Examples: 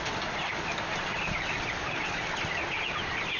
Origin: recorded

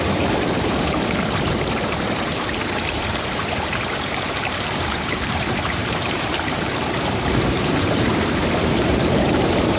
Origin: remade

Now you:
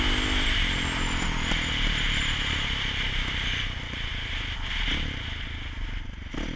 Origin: recorded